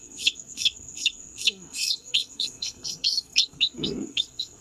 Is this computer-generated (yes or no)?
yes